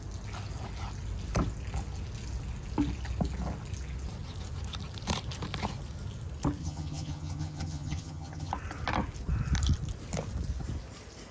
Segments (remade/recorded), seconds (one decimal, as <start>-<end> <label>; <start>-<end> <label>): 0.0-6.6 recorded; 6.6-8.5 remade; 8.5-11.3 recorded

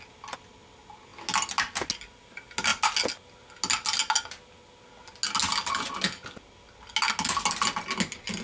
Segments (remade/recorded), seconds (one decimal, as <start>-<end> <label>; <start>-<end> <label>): 0.0-8.4 recorded

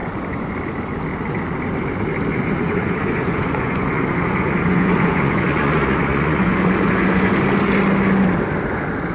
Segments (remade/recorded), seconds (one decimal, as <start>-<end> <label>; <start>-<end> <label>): 0.0-0.6 remade; 0.6-2.3 recorded; 2.3-7.4 remade; 7.4-9.1 recorded

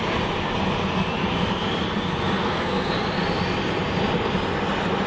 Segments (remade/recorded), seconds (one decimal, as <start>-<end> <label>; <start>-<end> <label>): 0.0-2.4 recorded; 2.4-2.9 remade; 2.9-5.1 recorded

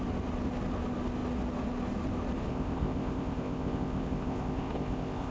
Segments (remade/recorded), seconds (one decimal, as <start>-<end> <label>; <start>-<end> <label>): 0.0-2.5 recorded; 2.5-5.3 remade

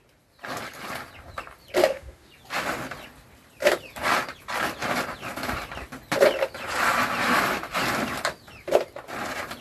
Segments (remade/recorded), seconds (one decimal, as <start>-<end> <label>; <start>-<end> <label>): 0.0-1.8 recorded; 1.8-2.3 remade; 2.3-9.6 recorded